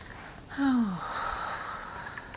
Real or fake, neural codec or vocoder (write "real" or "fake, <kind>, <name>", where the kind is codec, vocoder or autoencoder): real